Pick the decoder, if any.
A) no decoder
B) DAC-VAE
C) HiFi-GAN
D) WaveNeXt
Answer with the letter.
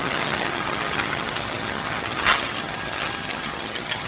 C